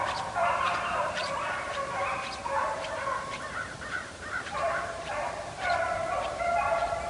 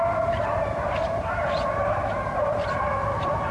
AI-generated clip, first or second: first